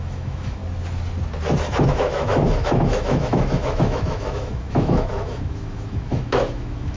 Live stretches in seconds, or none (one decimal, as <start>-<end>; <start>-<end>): 0.6-1.9